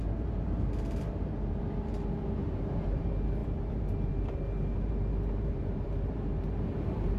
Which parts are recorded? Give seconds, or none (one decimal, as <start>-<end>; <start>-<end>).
none